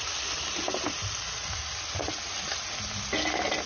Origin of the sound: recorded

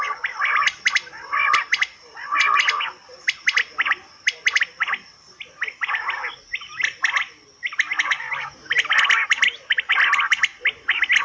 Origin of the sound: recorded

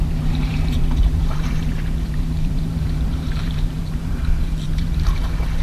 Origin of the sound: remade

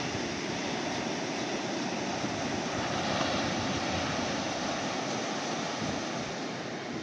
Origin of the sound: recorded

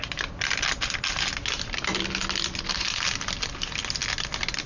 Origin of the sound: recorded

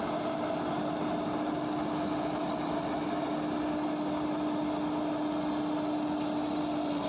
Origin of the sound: recorded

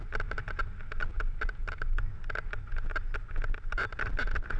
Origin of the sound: recorded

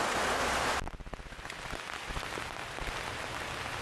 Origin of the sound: recorded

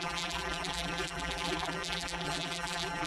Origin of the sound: remade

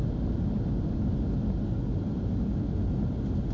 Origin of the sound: recorded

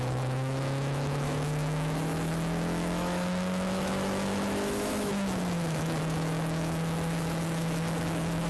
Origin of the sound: remade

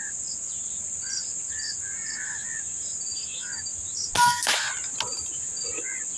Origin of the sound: recorded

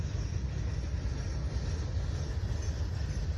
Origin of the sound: recorded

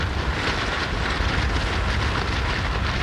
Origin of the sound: recorded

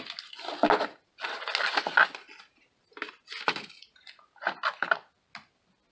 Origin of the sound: recorded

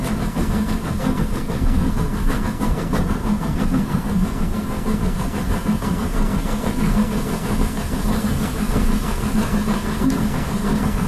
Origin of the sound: remade